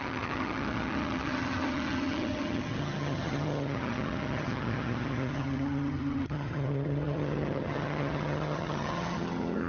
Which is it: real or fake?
fake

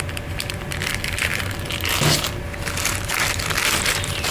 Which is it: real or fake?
real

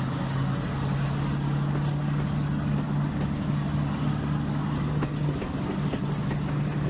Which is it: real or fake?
real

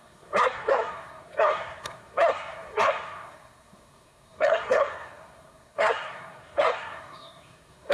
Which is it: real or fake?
fake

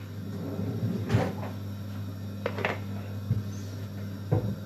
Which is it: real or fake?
real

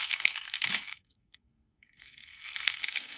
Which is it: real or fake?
fake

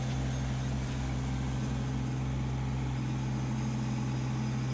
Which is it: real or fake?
real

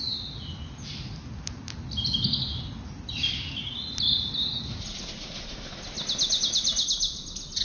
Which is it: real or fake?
real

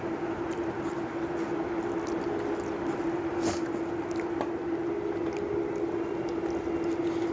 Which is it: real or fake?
real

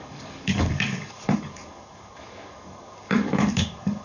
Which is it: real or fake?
fake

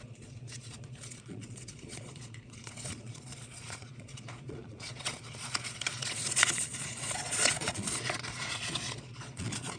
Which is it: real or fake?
fake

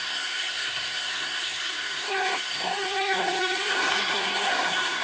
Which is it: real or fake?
fake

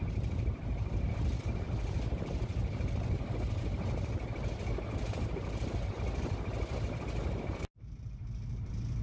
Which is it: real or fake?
real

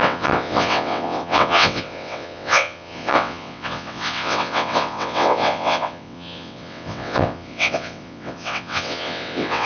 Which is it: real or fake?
fake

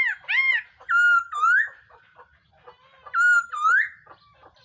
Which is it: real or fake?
real